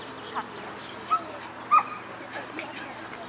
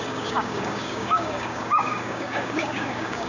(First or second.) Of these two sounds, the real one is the first